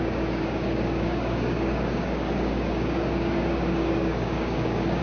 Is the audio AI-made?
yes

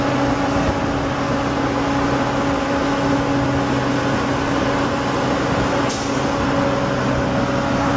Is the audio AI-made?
no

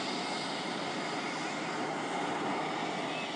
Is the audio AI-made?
no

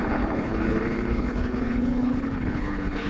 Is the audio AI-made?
yes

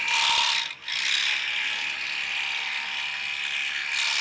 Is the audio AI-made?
no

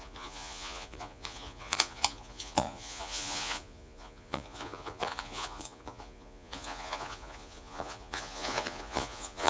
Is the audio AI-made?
yes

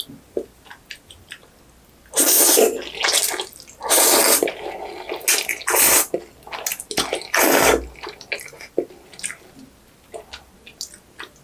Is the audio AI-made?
no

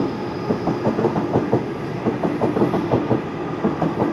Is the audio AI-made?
no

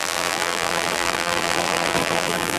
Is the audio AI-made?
yes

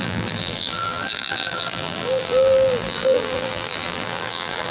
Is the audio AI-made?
yes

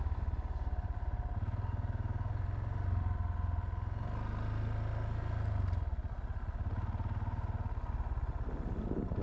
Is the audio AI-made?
no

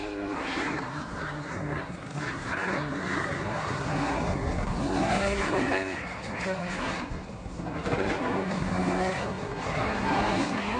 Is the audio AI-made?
yes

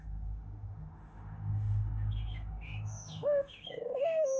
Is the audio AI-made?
yes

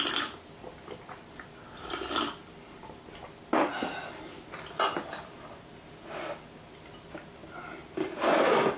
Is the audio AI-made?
no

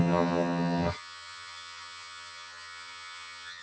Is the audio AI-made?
yes